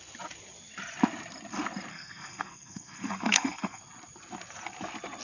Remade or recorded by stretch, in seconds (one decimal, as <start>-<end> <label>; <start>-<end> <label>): 0.0-1.9 recorded; 1.9-3.8 remade; 3.8-5.2 recorded